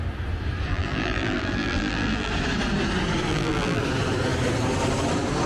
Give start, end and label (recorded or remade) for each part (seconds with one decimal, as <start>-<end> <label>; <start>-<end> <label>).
0.0-0.7 recorded; 0.7-2.3 remade; 2.3-3.3 recorded; 3.3-3.8 remade; 3.8-5.5 recorded